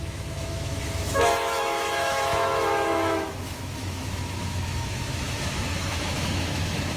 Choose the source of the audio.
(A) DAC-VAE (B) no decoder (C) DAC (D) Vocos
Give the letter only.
A